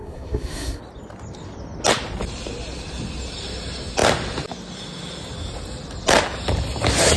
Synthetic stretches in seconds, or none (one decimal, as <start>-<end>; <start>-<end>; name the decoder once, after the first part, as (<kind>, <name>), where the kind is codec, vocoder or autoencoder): 0.0-0.8 (codec, SNAC)